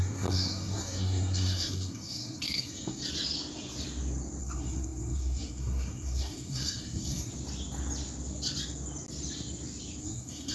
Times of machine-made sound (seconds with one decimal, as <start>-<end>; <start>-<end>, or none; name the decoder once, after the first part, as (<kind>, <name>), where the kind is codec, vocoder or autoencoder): 0.0-3.0 (codec, SNAC); 4.4-7.3; 10.0-10.5